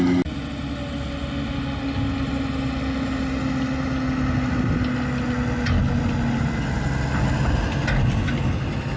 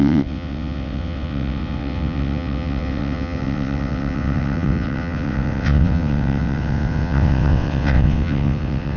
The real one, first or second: first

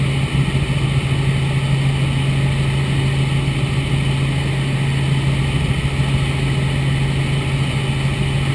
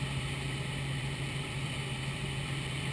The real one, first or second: first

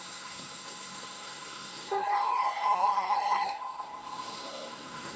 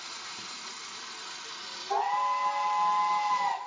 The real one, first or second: second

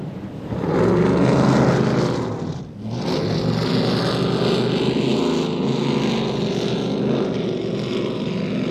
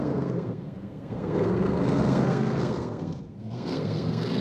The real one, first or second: first